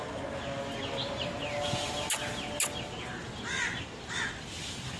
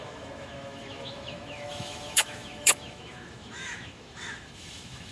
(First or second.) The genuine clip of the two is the first